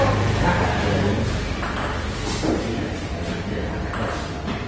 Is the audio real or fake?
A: real